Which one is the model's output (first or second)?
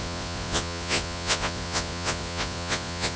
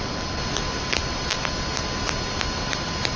first